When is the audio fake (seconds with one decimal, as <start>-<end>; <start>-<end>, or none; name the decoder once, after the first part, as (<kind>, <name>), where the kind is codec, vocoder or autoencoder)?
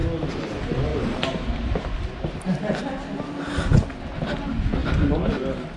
0.9-2.4 (vocoder, BigVGAN v2)